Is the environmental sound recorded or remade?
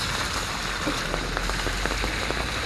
recorded